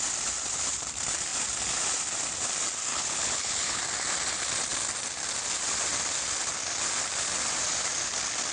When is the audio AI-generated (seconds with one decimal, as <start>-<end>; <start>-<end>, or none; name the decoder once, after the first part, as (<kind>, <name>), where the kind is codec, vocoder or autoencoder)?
2.9-3.8 (codec, HILCodec)